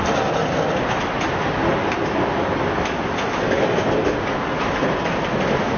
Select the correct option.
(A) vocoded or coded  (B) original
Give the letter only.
B